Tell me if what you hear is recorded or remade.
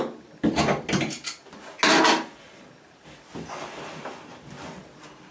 recorded